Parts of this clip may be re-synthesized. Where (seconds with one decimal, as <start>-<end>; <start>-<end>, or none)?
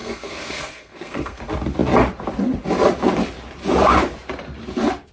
0.0-1.4